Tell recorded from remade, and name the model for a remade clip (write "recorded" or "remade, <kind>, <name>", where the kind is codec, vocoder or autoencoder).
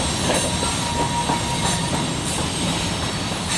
recorded